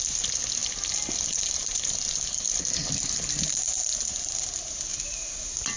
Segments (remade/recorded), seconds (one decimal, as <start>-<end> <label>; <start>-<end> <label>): 0.0-5.8 recorded